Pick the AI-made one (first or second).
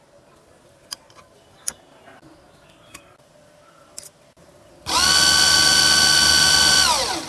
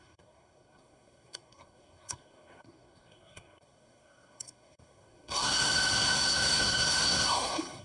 second